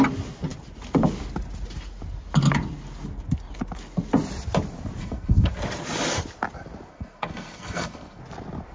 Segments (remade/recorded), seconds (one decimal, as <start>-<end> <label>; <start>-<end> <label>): 0.0-5.0 recorded; 5.0-5.5 remade; 5.5-6.9 recorded; 6.9-8.2 remade; 8.2-8.7 recorded